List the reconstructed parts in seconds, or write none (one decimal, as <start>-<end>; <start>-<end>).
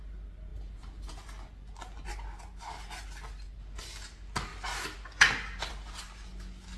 none